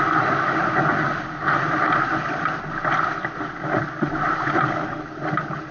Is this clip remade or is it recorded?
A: recorded